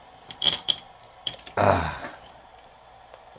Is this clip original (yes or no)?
no